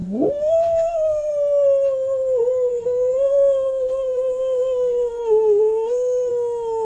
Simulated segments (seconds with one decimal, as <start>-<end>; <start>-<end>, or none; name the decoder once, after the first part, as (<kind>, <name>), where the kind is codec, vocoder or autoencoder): 0.0-1.3 (codec, SNAC); 2.7-6.3